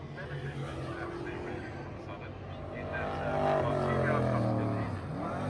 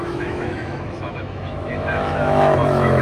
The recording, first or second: first